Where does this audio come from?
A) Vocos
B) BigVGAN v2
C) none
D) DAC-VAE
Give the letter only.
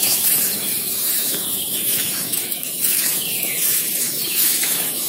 D